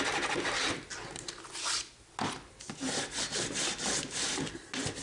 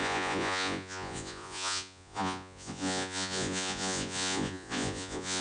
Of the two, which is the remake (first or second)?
second